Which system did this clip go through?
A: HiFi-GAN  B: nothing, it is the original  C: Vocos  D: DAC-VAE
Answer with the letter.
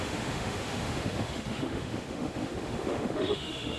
D